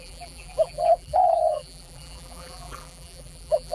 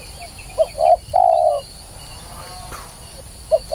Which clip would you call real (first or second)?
second